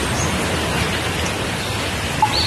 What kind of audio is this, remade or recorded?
recorded